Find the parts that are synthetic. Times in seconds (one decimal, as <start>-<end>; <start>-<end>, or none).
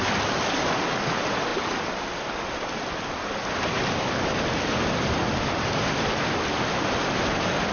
none